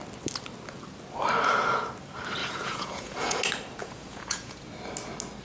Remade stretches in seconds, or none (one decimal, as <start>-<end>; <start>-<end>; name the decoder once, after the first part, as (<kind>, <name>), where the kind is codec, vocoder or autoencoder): 2.4-3.4 (vocoder, Vocos); 3.8-4.7